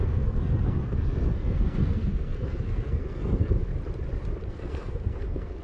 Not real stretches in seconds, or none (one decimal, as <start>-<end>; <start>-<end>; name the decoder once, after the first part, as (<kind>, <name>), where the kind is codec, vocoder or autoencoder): 0.0-3.7 (codec, SNAC); 4.5-5.6